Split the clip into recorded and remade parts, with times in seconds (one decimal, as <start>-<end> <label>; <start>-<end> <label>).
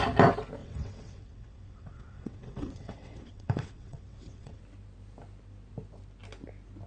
0.0-0.6 recorded; 0.6-4.6 remade; 4.6-6.9 recorded